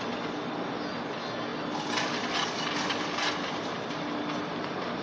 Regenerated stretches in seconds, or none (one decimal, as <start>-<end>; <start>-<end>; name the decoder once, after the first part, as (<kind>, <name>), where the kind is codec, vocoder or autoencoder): none